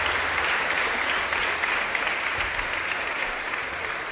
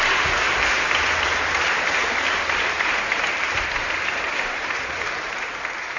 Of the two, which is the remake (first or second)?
second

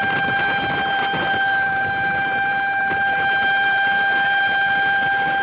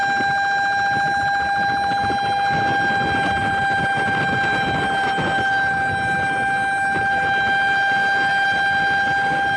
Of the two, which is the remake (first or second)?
first